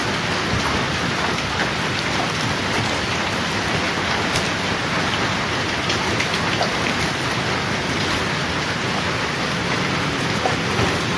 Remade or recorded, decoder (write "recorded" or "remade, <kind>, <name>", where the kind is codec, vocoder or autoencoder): recorded